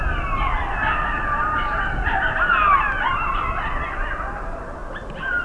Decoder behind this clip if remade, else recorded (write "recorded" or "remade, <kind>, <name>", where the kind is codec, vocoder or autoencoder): recorded